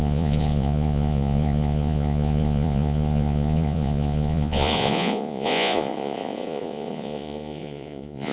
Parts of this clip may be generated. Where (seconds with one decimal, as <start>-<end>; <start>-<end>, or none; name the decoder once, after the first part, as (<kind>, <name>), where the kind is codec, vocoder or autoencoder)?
0.0-8.3 (vocoder, Vocos)